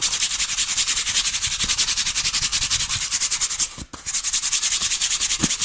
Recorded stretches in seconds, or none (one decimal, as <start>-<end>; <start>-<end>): 0.0-5.6